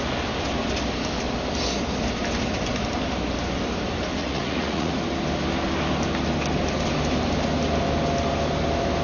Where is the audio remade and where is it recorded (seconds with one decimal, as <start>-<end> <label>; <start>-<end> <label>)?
0.0-4.2 recorded; 4.2-4.9 remade; 4.9-9.0 recorded